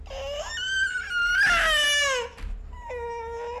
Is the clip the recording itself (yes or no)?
yes